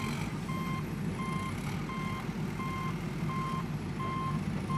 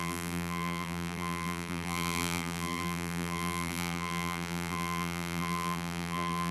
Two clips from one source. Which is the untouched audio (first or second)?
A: first